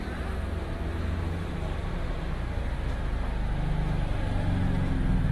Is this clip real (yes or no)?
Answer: yes